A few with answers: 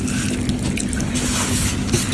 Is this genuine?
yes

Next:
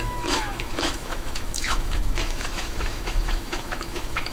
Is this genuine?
no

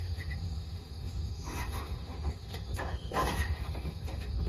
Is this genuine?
no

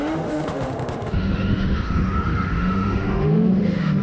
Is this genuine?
no